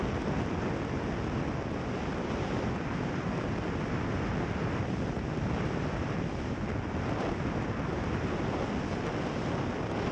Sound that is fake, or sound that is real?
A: real